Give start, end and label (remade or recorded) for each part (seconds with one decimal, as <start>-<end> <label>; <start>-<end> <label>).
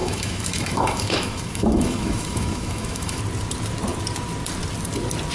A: 0.0-3.2 remade; 3.2-5.3 recorded